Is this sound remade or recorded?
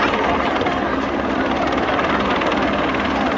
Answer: remade